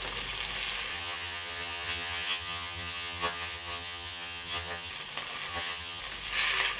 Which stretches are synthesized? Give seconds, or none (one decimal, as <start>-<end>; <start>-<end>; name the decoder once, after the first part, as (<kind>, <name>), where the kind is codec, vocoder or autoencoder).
0.9-4.9 (vocoder, HiFi-GAN); 5.5-6.0